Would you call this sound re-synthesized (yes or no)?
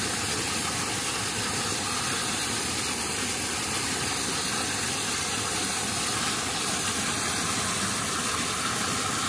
no